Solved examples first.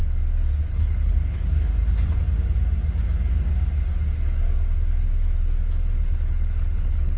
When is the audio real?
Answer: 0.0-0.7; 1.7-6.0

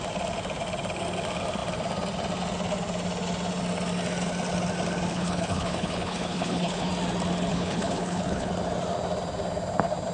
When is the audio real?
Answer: 0.0-5.1; 6.9-7.5; 8.5-10.1

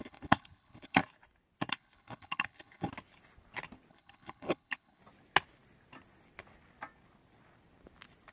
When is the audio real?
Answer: 1.0-1.7; 2.9-3.9; 5.0-8.3